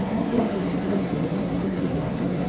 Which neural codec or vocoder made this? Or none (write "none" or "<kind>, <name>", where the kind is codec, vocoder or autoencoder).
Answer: codec, SNAC